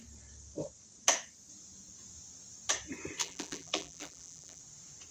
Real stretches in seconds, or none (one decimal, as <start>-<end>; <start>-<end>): 0.0-3.2; 4.6-5.1